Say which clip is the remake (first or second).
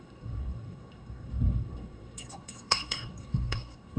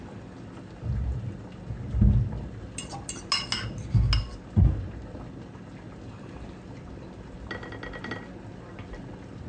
first